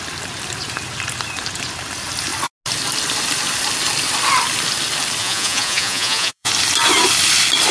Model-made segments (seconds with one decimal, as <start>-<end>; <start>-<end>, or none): 5.2-6.5